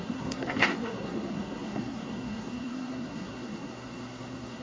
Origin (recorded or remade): remade